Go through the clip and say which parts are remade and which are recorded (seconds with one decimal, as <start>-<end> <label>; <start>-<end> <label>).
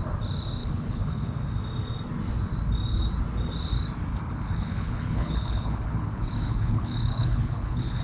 0.0-0.6 recorded; 0.6-1.3 remade; 1.3-4.1 recorded; 4.1-8.0 remade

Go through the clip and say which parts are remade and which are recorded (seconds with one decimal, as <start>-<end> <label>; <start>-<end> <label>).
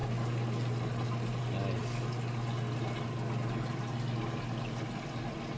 0.0-5.6 recorded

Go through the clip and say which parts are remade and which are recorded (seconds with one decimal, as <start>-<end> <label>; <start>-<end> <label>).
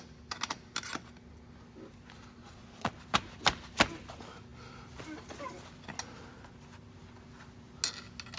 0.0-2.4 recorded; 2.4-2.9 remade; 2.9-8.4 recorded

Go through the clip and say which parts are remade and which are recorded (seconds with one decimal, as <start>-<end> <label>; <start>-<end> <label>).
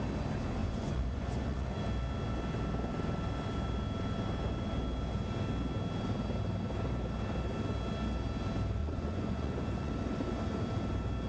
0.0-0.6 recorded; 0.6-1.8 remade; 1.8-8.8 recorded; 8.8-9.9 remade; 9.9-11.3 recorded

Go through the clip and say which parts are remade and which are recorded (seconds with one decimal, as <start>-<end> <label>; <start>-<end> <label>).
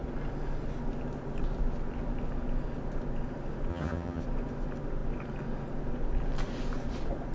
0.0-3.7 recorded; 3.7-4.2 remade; 4.2-7.3 recorded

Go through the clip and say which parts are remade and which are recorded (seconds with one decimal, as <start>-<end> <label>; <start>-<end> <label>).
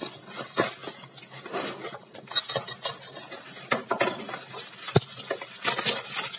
0.0-6.4 recorded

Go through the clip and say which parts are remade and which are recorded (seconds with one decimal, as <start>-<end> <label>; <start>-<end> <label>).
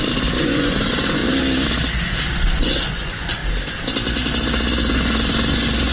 0.0-1.2 remade; 1.2-2.1 recorded; 2.1-3.4 remade; 3.4-4.9 recorded; 4.9-5.9 remade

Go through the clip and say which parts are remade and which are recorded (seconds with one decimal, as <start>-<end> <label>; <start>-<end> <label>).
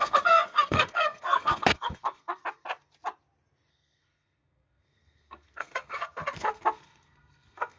0.0-2.4 remade; 2.4-3.7 recorded; 3.7-7.8 remade